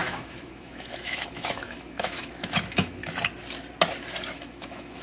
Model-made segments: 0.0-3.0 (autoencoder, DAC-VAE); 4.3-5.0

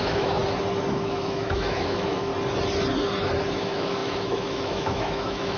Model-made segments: 0.0-0.4 (autoencoder, DAC-VAE); 0.9-2.3; 3.5-5.6

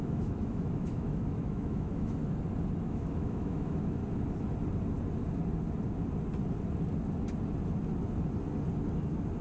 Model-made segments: 0.0-2.2 (autoencoder, DAC-VAE); 2.8-4.0

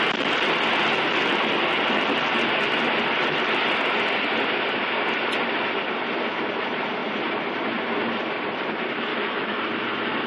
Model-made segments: 9.1-9.6 (autoencoder, DAC-VAE)